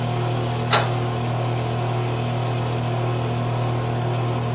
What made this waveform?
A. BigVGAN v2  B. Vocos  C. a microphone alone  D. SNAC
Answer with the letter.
C